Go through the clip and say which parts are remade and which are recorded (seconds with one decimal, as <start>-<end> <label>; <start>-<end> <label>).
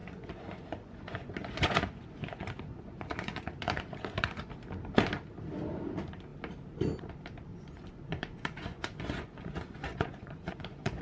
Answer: 0.0-4.5 remade; 4.5-7.5 recorded; 7.5-11.0 remade